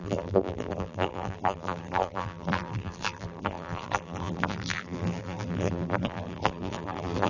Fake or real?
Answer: fake